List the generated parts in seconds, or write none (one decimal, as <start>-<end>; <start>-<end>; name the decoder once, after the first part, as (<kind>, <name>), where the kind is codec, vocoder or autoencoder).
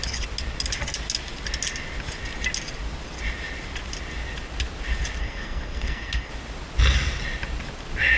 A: 5.2-6.3 (codec, SNAC)